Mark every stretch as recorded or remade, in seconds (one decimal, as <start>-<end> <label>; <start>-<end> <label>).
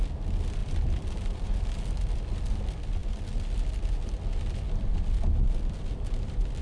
0.0-0.6 recorded; 0.6-1.5 remade; 1.5-6.6 recorded